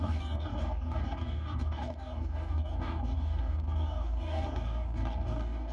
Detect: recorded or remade remade